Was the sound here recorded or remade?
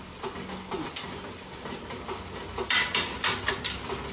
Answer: recorded